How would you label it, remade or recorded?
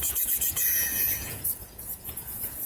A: remade